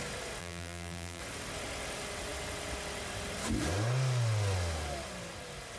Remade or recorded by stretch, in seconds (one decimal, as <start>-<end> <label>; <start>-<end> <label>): 0.0-0.4 recorded; 0.4-1.2 remade; 1.2-5.8 recorded